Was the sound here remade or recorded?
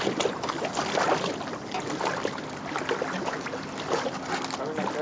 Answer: recorded